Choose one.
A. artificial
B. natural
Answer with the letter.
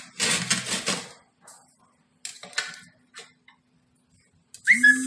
B